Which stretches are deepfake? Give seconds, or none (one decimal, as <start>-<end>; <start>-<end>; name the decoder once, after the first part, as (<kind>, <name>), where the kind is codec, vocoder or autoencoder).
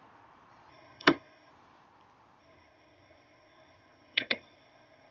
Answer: 0.7-1.5 (codec, SNAC); 2.4-5.1